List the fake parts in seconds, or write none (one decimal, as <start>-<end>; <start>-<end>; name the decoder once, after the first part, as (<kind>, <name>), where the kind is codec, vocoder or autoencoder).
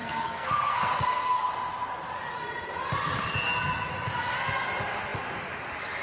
0.0-1.5 (codec, SNAC)